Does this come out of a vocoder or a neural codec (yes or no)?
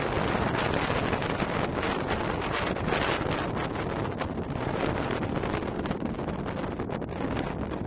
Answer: yes